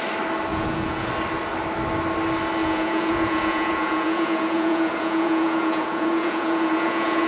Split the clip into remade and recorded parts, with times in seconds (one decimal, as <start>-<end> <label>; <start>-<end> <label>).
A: 0.0-0.5 recorded; 0.5-1.1 remade; 1.1-2.6 recorded; 2.6-7.3 remade